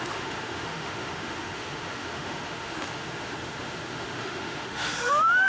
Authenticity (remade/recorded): remade